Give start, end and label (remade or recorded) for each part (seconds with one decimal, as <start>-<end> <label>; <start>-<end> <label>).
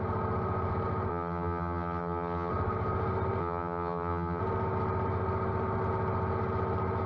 0.0-1.1 recorded; 1.1-2.5 remade; 2.5-3.4 recorded; 3.4-4.4 remade; 4.4-7.1 recorded